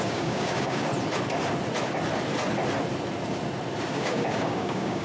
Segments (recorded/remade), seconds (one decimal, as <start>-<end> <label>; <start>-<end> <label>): 0.0-0.9 remade; 0.9-3.9 recorded; 3.9-5.0 remade